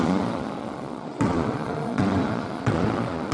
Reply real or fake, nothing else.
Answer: fake